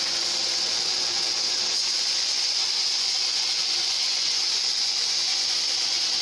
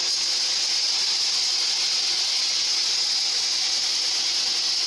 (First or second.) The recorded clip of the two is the second